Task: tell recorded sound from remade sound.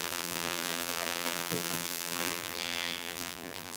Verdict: remade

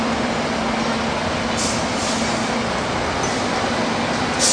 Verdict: recorded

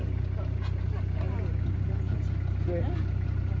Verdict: recorded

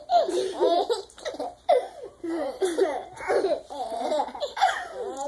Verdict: remade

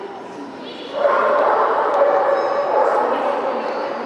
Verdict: remade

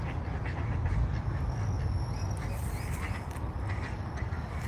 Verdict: recorded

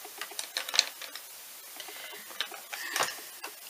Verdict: recorded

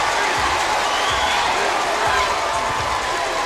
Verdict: recorded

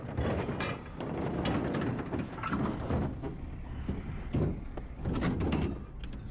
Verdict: recorded